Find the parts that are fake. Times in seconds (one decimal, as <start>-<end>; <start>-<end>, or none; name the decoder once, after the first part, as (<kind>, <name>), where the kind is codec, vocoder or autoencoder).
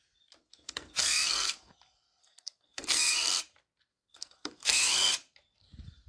0.4-1.7 (codec, SNAC); 2.2-3.4; 3.9-5.1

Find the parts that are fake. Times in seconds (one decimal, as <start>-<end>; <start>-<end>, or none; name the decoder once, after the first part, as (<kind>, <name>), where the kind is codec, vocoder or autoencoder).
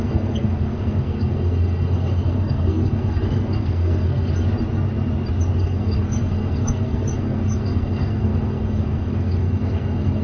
0.0-4.3 (codec, SNAC); 5.6-10.2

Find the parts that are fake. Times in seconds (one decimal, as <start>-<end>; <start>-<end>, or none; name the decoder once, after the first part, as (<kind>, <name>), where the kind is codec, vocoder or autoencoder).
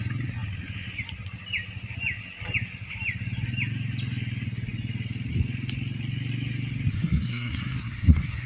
6.9-8.5 (codec, SNAC)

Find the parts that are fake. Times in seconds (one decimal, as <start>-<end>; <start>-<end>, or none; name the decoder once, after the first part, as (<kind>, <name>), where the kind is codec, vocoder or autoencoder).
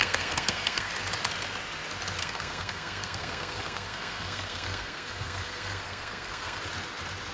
0.0-0.9 (codec, SNAC); 2.2-6.6